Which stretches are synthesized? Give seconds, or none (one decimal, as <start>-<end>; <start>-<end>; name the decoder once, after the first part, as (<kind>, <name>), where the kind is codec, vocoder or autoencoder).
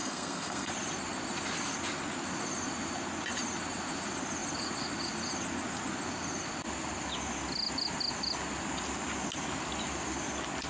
0.0-0.7 (codec, SNAC)